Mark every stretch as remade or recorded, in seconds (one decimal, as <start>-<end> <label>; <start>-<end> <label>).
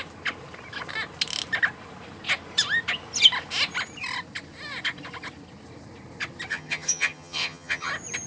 0.0-6.5 recorded; 6.5-7.9 remade; 7.9-8.3 recorded